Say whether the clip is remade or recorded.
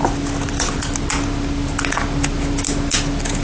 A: recorded